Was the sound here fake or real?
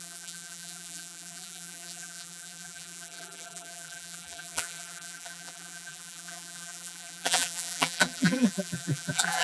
fake